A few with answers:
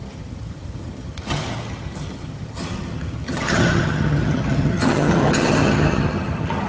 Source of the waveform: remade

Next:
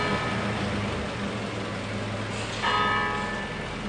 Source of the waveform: recorded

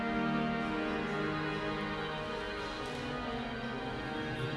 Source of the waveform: recorded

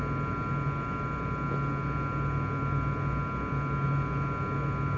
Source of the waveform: recorded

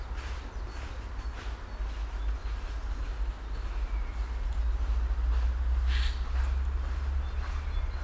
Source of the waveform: recorded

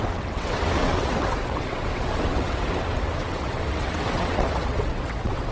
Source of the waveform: remade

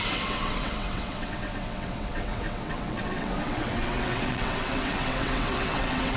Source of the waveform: remade